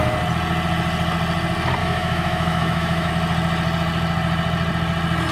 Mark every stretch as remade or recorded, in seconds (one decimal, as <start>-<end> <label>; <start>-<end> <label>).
0.0-1.8 recorded; 1.8-3.1 remade; 3.1-5.3 recorded